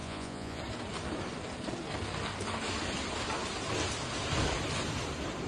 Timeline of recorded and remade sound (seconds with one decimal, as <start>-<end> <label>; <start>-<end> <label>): 0.0-0.6 remade; 0.6-5.5 recorded